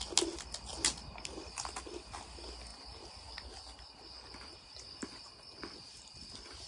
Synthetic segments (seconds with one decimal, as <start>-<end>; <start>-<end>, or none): none